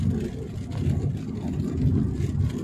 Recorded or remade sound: recorded